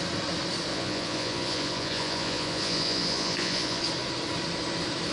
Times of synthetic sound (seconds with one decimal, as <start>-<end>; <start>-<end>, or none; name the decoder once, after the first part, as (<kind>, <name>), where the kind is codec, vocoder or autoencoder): 0.7-3.8 (vocoder, Vocos)